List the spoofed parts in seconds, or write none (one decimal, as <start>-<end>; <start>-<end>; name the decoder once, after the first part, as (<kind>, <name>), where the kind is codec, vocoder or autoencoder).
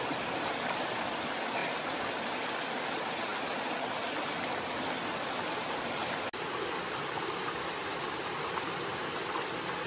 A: none